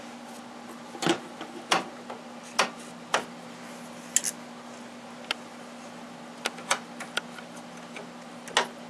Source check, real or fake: real